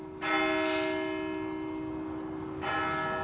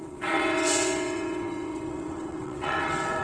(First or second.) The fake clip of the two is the second